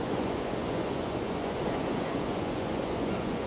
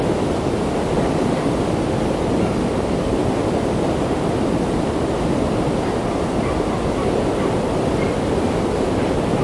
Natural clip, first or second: second